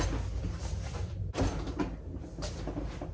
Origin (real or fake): real